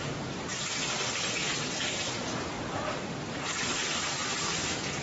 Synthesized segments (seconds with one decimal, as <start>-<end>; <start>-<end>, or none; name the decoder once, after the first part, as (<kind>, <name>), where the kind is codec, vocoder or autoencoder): none